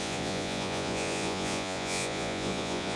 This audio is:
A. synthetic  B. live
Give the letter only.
A